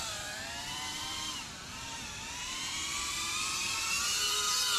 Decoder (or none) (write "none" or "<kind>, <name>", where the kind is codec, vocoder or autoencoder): vocoder, BigVGAN v2